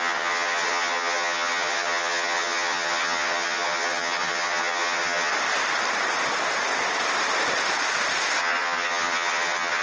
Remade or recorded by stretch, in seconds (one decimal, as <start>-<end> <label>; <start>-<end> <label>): 0.0-5.3 remade; 5.3-8.4 recorded; 8.4-9.8 remade

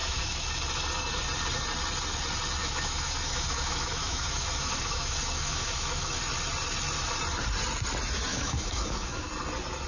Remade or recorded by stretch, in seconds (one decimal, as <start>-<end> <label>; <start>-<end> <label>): 0.0-0.5 remade; 0.5-2.6 recorded; 2.6-6.2 remade; 6.2-8.3 recorded; 8.3-9.3 remade; 9.3-9.9 recorded

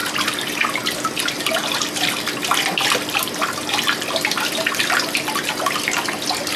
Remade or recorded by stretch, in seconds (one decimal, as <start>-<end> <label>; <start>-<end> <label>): 0.0-0.8 remade; 0.8-1.6 recorded; 1.6-5.6 remade; 5.6-6.6 recorded

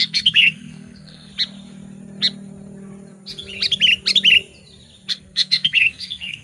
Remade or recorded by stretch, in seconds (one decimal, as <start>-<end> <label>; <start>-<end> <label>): 0.0-1.3 remade; 1.3-5.1 recorded; 5.1-6.4 remade

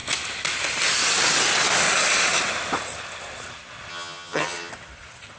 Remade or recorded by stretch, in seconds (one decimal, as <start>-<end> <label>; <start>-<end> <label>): 0.0-3.9 recorded; 3.9-4.7 remade; 4.7-5.4 recorded